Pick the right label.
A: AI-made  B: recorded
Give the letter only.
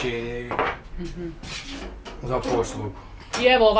B